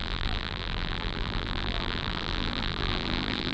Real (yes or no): no